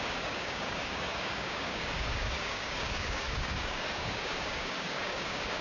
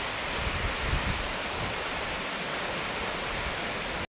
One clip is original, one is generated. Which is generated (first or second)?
first